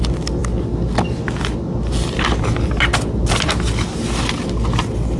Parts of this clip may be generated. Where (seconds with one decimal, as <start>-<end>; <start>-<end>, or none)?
none